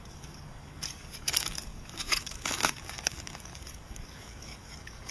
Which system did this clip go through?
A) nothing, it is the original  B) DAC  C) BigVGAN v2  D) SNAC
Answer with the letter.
B